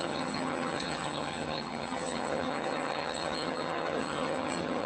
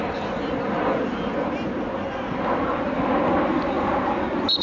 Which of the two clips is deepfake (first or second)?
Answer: first